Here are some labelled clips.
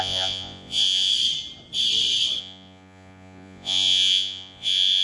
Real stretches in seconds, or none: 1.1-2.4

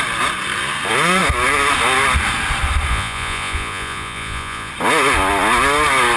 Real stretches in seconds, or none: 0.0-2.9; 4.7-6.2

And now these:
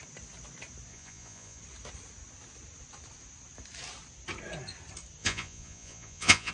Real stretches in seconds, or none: 0.0-0.9; 1.6-5.2